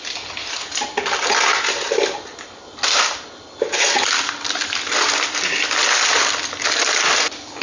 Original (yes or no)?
yes